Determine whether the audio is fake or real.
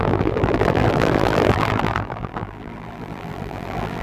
fake